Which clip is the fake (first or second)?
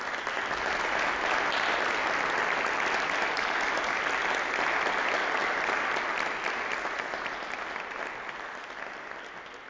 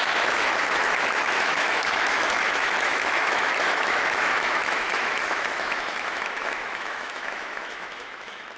second